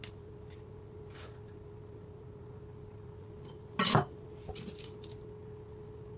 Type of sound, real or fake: real